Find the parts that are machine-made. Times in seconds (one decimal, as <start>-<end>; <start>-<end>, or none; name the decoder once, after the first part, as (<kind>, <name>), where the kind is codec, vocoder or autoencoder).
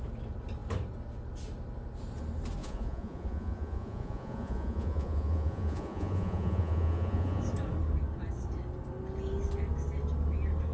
2.6-7.4 (vocoder, Vocos)